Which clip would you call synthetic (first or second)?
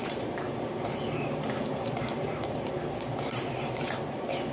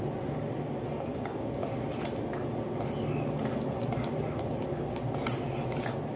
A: first